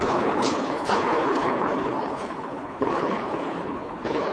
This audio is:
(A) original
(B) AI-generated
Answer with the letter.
B